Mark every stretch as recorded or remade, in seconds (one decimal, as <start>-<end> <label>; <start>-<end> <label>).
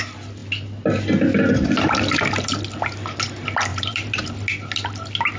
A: 0.0-3.7 recorded; 3.7-4.3 remade; 4.3-5.4 recorded